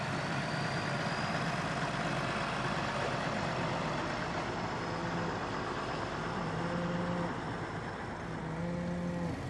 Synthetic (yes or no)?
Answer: no